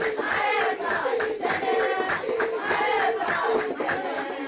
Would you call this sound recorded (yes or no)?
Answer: yes